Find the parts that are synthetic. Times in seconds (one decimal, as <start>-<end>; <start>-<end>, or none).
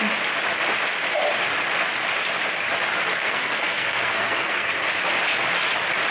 3.1-4.9